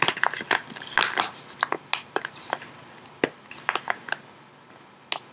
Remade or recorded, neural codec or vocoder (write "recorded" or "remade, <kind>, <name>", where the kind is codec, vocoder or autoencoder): recorded